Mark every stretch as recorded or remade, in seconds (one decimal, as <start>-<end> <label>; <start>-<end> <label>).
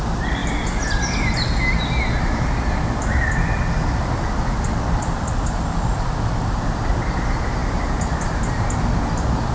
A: 0.0-9.5 recorded